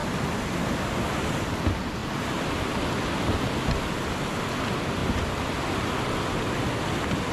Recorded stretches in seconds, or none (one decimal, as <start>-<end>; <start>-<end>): 0.0-7.3